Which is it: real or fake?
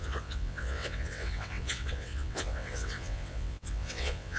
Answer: fake